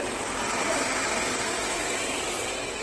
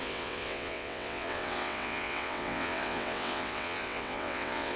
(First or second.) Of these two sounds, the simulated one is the second